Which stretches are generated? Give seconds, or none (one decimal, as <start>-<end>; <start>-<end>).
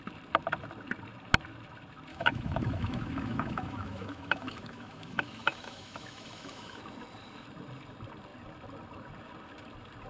2.1-6.8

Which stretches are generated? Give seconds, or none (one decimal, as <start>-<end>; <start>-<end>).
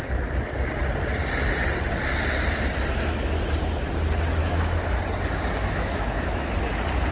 4.4-5.0; 5.6-6.5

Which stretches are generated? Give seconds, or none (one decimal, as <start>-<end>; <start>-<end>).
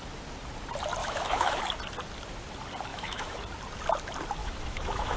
1.0-1.6; 2.9-3.4; 4.4-5.2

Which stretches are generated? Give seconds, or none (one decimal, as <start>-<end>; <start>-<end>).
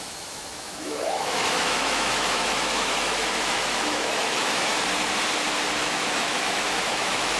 0.0-4.7; 5.8-7.4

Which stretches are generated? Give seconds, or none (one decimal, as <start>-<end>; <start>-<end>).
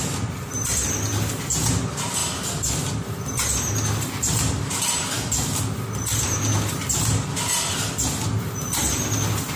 none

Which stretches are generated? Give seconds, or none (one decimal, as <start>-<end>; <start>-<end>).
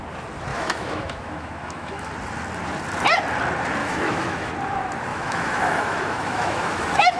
0.5-2.1; 3.8-4.5; 5.1-7.2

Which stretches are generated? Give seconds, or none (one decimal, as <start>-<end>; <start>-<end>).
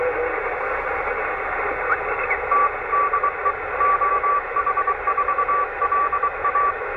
4.1-7.0